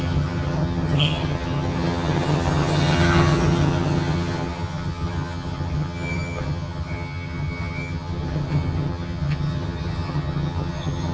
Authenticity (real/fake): fake